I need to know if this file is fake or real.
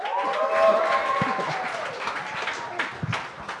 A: real